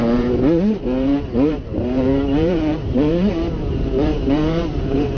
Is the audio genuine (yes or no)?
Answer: no